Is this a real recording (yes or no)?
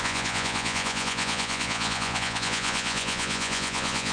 no